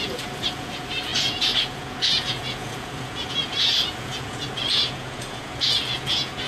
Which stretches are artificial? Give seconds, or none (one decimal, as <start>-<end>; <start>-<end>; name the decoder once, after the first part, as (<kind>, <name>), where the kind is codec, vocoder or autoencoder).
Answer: 0.0-6.5 (vocoder, Vocos)